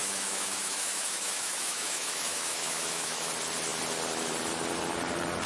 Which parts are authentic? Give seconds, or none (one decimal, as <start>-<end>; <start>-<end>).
3.3-5.5